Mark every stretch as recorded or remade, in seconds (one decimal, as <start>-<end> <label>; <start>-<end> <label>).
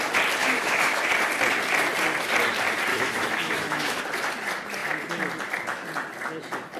0.0-0.4 recorded; 0.4-1.1 remade; 1.1-2.9 recorded; 2.9-4.0 remade; 4.0-6.8 recorded